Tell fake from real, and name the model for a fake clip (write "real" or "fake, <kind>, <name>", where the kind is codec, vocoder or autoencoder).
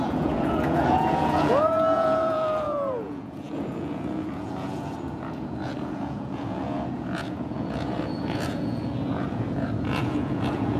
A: fake, vocoder, Vocos